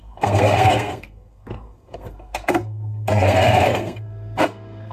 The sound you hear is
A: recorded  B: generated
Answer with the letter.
B